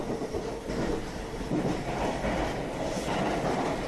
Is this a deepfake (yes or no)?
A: no